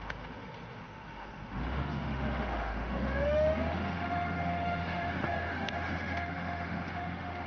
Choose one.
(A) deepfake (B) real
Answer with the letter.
A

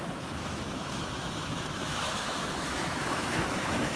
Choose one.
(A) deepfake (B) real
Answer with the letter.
A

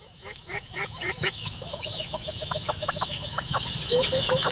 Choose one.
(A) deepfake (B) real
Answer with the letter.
A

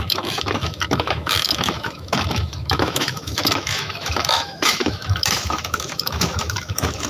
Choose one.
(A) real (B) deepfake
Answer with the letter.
B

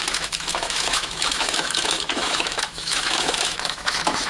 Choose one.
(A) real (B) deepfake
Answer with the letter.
B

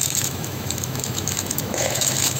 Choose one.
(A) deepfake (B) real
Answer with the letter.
A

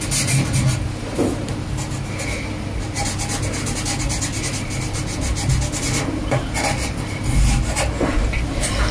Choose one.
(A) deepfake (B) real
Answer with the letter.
B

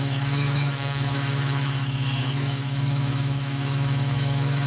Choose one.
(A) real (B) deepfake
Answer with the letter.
B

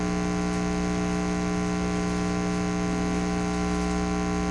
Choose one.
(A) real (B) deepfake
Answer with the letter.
A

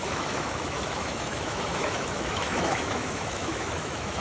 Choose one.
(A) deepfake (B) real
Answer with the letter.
A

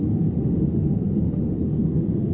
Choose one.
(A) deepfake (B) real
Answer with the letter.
A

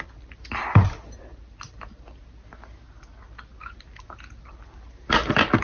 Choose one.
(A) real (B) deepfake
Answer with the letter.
A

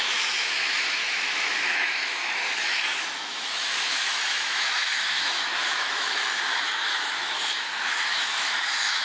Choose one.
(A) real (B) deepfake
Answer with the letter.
B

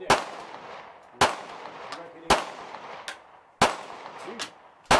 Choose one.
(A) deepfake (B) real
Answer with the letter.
B